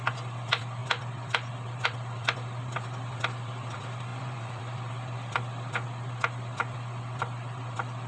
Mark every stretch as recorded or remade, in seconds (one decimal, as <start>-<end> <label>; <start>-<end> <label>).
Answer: 0.0-4.1 recorded; 4.1-4.6 remade; 4.6-8.1 recorded